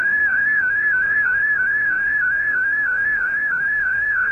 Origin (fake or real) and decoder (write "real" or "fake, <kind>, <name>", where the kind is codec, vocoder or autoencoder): fake, codec, SNAC